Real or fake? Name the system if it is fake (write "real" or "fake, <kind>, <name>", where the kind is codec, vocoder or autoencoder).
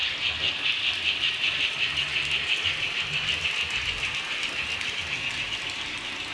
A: real